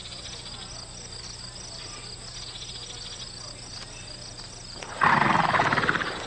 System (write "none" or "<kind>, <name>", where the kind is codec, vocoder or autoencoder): none